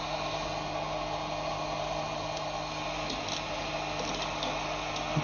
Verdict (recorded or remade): recorded